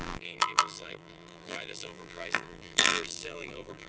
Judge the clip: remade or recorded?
remade